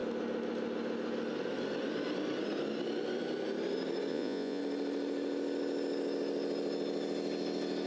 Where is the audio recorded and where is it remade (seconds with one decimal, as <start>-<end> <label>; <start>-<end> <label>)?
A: 0.0-4.1 recorded; 4.1-4.6 remade; 4.6-7.9 recorded